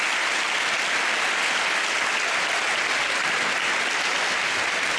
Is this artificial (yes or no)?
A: no